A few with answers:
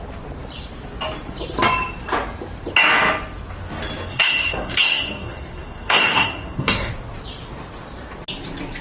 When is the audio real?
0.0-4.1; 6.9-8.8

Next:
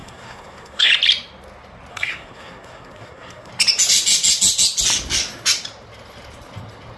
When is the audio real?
0.9-1.9; 3.5-7.0

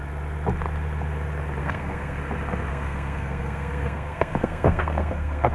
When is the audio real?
0.0-1.6; 2.2-2.7

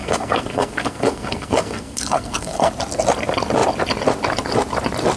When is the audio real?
2.7-5.2